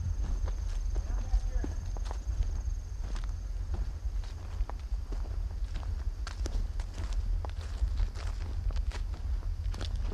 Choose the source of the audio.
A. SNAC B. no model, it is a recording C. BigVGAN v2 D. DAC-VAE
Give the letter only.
B